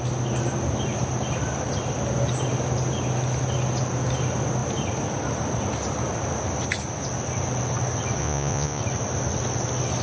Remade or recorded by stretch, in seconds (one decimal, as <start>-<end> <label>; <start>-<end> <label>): 0.0-8.2 recorded; 8.2-8.8 remade; 8.8-10.0 recorded

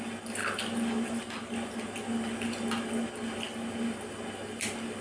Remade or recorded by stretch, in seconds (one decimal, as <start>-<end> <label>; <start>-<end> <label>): 0.0-5.0 recorded

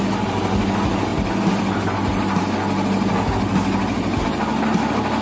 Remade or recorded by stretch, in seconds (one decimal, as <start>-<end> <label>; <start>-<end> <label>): 0.0-5.2 recorded

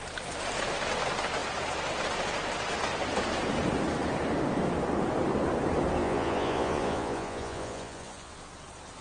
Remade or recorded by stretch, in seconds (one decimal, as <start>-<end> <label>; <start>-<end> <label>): 0.0-6.0 recorded; 6.0-8.3 remade; 8.3-9.0 recorded

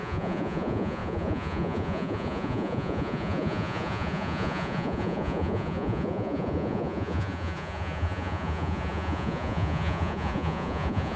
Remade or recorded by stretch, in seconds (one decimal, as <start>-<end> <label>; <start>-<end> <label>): 0.0-11.2 remade

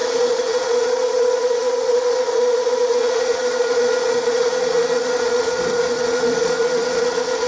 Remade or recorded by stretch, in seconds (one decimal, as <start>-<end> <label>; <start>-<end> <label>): 0.0-7.5 remade